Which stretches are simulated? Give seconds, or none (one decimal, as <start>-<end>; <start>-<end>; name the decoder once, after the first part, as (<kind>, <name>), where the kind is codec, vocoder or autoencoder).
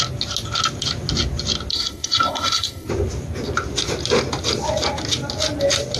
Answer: 1.7-2.9 (codec, SNAC)